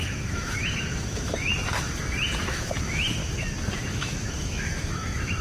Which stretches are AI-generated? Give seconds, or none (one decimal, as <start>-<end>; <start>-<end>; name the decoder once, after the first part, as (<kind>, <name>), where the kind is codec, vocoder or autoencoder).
0.0-1.5 (autoencoder, DAC-VAE); 2.4-3.2; 3.8-5.4